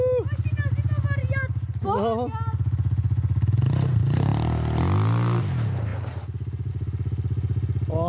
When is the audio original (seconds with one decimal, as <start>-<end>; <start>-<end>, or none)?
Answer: 0.0-8.1